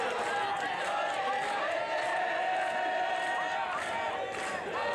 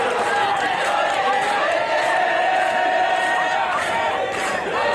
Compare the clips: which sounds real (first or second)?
first